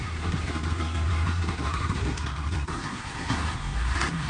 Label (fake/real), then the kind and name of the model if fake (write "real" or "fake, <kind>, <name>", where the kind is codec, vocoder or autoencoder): fake, codec, SNAC